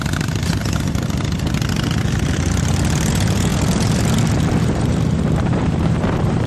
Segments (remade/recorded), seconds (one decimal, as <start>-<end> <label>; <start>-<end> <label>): 0.0-0.6 remade; 0.6-3.1 recorded; 3.1-3.5 remade; 3.5-4.6 recorded; 4.6-6.5 remade